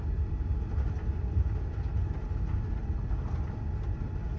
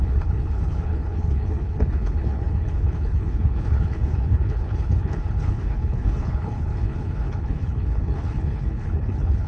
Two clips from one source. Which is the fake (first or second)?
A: second